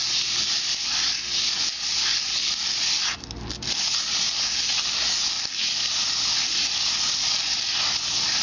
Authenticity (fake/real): real